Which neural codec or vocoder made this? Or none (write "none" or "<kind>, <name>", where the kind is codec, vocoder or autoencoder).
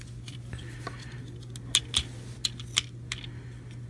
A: none